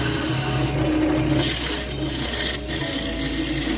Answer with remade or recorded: recorded